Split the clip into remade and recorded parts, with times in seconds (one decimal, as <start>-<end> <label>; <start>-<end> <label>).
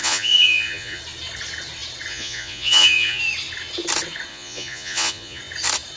0.0-1.0 remade; 1.0-2.1 recorded; 2.1-3.2 remade; 3.2-4.3 recorded; 4.3-5.4 remade; 5.4-6.0 recorded